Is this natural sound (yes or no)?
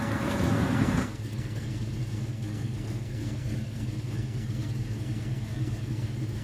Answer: no